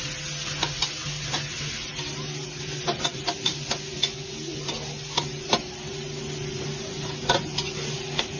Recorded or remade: recorded